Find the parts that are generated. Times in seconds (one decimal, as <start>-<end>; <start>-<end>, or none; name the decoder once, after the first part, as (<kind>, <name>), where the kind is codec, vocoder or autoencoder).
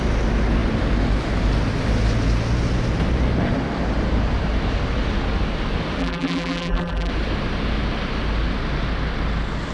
6.0-7.1 (vocoder, BigVGAN v2)